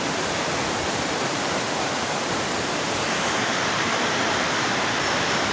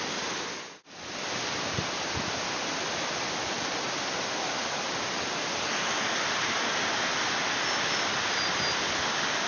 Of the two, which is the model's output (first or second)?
first